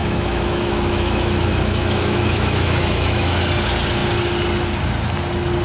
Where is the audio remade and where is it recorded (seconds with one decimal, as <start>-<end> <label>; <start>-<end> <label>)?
0.0-3.4 remade; 3.4-5.6 recorded